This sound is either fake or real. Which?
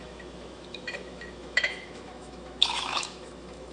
fake